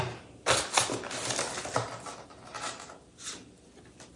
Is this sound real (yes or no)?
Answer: yes